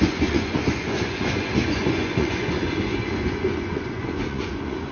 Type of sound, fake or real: fake